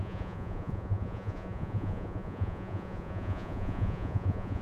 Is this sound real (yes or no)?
no